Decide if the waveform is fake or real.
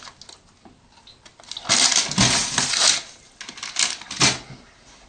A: real